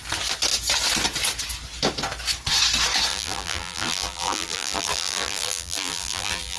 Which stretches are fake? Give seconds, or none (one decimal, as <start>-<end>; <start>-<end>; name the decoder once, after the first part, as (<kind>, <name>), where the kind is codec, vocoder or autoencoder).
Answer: 3.1-6.6 (vocoder, BigVGAN v2)

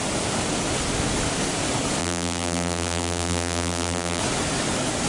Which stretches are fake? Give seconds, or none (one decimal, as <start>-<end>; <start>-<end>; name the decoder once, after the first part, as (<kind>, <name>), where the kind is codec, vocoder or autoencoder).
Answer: 2.0-4.2 (vocoder, BigVGAN v2)